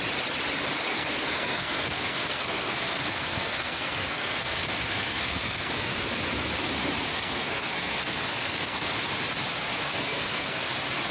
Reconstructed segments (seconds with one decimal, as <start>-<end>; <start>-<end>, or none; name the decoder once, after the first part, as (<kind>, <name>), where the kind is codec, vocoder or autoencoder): 0.9-5.9 (codec, SNAC); 7.1-8.9; 9.8-10.7